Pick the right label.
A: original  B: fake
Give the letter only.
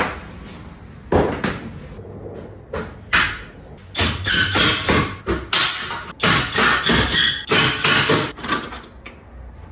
A